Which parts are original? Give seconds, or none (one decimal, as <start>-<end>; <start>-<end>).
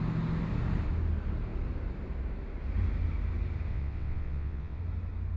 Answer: 0.0-3.7; 4.8-5.4